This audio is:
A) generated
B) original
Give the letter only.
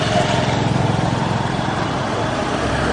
B